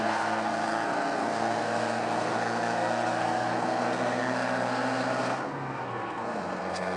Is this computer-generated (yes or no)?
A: yes